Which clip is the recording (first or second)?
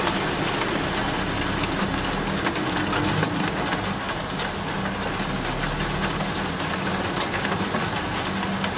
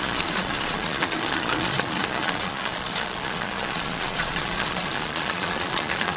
first